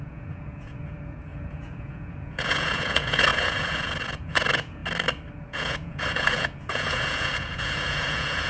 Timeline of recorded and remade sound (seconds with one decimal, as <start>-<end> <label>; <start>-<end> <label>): 0.0-4.8 remade; 4.8-5.4 recorded; 5.4-8.5 remade